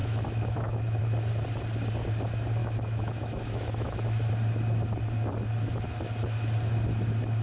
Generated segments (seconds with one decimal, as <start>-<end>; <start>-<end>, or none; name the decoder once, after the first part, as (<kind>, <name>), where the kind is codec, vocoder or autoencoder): 0.0-1.0 (autoencoder, DAC-VAE); 2.6-4.3